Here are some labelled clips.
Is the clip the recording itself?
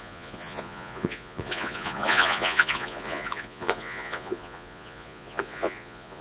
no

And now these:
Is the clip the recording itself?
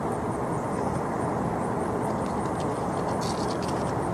yes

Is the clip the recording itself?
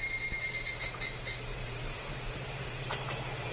no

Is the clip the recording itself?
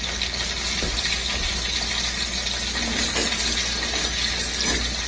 yes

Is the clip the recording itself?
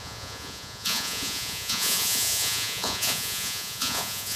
no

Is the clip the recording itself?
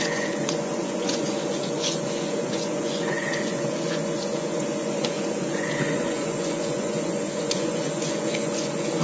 no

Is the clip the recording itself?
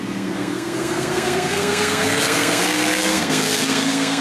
no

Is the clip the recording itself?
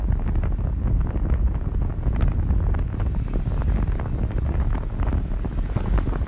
yes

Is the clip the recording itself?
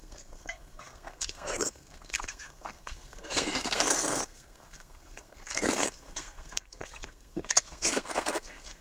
no